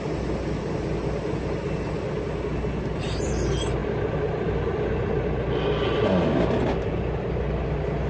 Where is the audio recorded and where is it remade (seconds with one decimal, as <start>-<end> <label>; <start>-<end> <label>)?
0.0-8.1 recorded